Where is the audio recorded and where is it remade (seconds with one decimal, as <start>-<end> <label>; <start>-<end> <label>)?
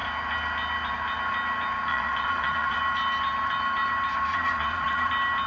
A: 0.0-1.9 recorded; 1.9-2.8 remade; 2.8-4.3 recorded; 4.3-5.1 remade; 5.1-5.5 recorded